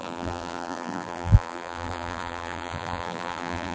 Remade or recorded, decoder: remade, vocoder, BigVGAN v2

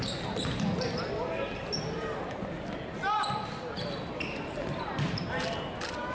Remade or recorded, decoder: recorded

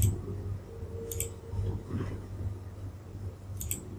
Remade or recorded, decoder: recorded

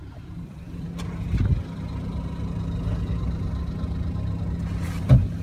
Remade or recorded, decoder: recorded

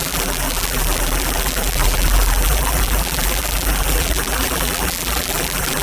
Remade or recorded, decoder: remade, vocoder, BigVGAN v2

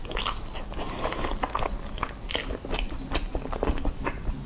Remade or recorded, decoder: recorded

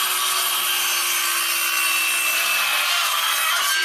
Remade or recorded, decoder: recorded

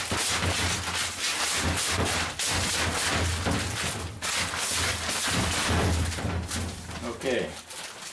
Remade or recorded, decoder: recorded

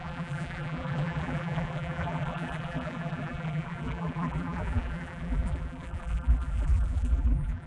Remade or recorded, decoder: remade, vocoder, BigVGAN v2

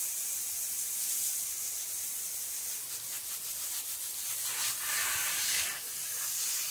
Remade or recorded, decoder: recorded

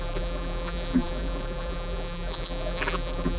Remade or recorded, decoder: remade, vocoder, BigVGAN v2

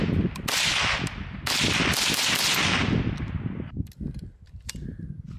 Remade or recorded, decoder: recorded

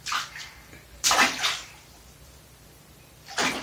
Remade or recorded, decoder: remade, vocoder, BigVGAN v2